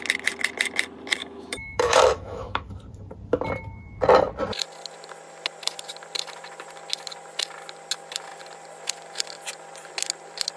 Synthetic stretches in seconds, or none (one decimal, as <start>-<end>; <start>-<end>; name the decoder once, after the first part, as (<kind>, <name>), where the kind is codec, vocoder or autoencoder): 1.2-2.6 (autoencoder, DAC-VAE)

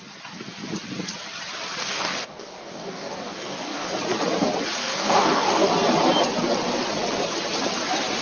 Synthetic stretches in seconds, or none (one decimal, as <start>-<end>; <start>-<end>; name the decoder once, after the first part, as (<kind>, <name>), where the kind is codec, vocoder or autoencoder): 1.8-3.9 (codec, DAC); 4.8-5.7

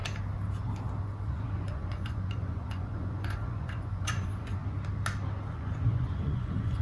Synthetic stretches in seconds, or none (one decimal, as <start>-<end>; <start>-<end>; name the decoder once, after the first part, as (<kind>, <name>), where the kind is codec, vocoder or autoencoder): 1.0-4.6 (vocoder, Vocos); 5.5-6.8

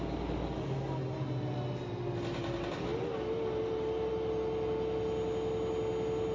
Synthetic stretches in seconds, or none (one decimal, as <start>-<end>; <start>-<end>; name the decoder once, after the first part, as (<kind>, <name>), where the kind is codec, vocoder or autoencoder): none

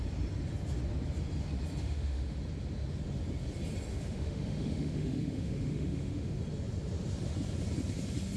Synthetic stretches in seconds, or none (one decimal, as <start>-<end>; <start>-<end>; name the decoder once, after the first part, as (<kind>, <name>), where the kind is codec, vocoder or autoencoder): 1.8-2.4 (autoencoder, DAC-VAE); 3.9-6.4

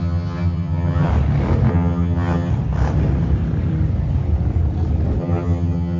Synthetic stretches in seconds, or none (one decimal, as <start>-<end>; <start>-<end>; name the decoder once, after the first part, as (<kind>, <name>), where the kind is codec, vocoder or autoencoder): 0.0-1.1 (vocoder, HiFi-GAN); 1.7-2.5; 5.2-6.0

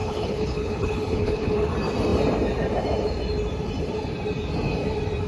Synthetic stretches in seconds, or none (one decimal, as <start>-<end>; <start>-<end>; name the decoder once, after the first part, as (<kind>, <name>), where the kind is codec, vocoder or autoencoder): 0.0-1.7 (codec, HILCodec)